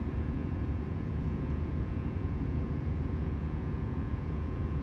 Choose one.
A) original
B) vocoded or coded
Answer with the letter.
B